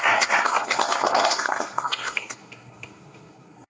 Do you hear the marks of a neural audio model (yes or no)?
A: yes